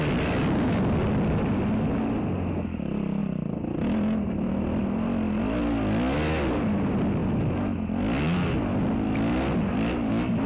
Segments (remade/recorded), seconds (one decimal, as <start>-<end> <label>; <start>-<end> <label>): 0.0-10.5 recorded

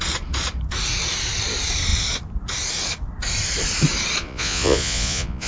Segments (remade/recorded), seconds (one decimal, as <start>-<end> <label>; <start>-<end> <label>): 0.0-4.2 recorded; 4.2-5.5 remade

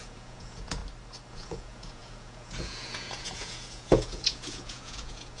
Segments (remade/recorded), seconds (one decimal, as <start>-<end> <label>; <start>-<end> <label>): 0.0-0.8 remade; 0.8-1.3 recorded; 1.3-5.4 remade

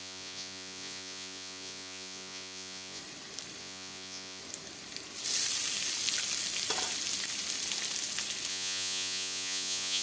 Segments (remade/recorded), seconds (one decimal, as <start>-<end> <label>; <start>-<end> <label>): 0.0-3.0 remade; 3.0-3.6 recorded; 3.6-4.4 remade; 4.4-8.5 recorded; 8.5-10.0 remade